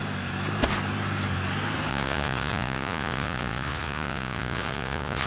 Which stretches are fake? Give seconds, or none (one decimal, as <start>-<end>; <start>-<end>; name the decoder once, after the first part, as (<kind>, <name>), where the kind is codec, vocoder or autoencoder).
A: 1.9-5.3 (vocoder, Vocos)